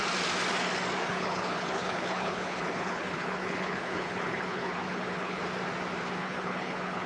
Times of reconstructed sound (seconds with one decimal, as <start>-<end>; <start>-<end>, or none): 1.1-5.4; 6.2-7.1